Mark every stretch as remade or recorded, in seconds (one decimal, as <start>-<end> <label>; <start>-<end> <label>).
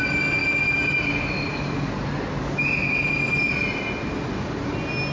0.0-5.1 recorded